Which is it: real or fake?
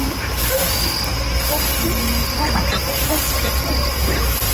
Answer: real